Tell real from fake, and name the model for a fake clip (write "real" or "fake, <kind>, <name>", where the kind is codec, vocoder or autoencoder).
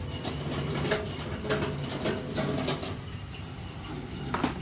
real